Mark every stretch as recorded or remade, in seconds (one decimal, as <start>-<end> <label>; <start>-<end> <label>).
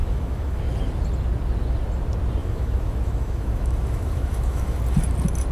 0.0-0.6 remade; 0.6-2.4 recorded; 2.4-4.8 remade; 4.8-5.5 recorded